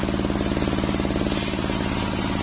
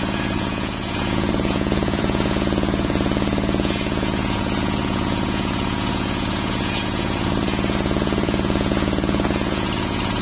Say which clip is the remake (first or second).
second